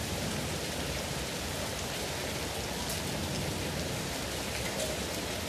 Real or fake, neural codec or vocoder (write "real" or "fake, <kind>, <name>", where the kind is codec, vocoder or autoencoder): real